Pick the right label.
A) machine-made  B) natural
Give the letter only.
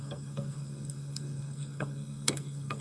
A